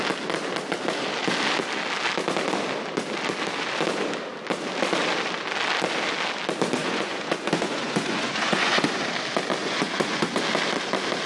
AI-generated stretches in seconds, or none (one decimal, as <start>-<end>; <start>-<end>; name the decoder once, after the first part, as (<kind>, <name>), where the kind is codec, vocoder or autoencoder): 6.8-9.0 (vocoder, Vocos); 9.6-10.4